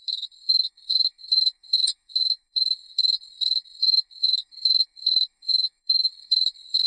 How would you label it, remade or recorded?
remade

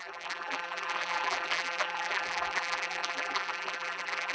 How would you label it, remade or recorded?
remade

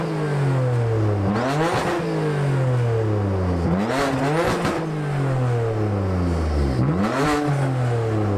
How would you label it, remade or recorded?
recorded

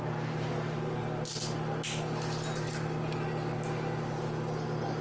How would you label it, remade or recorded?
recorded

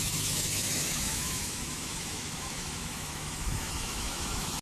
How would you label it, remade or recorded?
remade